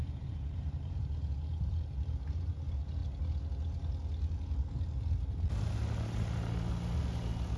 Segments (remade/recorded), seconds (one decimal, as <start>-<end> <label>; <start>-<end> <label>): 0.0-2.5 remade; 2.5-7.6 recorded